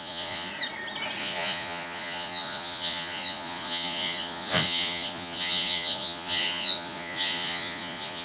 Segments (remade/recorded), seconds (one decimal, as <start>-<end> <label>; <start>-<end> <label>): 0.0-0.5 remade; 0.5-1.2 recorded; 1.2-8.2 remade